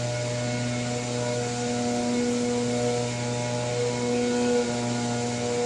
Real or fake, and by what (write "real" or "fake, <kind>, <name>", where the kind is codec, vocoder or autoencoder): real